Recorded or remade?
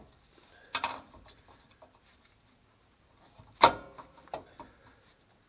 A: recorded